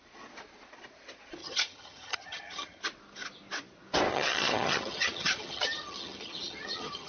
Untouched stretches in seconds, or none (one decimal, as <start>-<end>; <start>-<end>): 0.0-1.4; 2.8-4.1